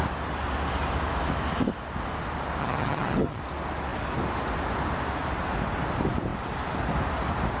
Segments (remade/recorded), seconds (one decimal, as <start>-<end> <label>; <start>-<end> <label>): 0.0-2.6 recorded; 2.6-3.4 remade; 3.4-7.6 recorded